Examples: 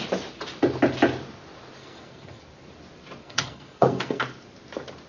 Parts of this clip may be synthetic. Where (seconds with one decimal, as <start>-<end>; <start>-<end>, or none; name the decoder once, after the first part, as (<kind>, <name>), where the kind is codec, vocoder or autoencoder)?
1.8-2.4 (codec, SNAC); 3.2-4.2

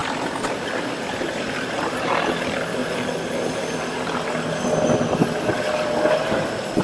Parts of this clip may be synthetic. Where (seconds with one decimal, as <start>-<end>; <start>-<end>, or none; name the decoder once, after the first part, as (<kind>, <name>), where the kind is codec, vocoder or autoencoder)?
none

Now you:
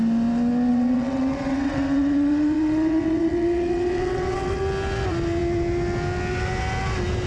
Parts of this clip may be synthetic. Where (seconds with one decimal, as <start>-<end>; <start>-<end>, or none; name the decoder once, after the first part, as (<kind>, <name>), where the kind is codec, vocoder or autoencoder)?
0.7-4.6 (vocoder, WaveNeXt)

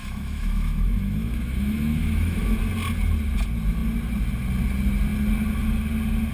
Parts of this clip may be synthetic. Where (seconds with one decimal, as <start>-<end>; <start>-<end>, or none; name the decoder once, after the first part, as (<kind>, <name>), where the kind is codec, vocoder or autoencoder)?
0.0-2.6 (autoencoder, DAC-VAE)

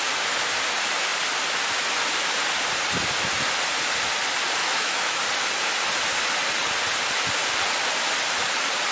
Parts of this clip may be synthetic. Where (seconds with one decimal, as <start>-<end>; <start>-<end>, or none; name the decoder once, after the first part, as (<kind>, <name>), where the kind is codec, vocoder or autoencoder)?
4.6-5.2 (autoencoder, DAC-VAE)

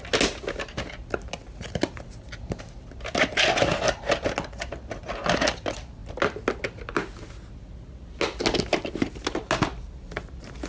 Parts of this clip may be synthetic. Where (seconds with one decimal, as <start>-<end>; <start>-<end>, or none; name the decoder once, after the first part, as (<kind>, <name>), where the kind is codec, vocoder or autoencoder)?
none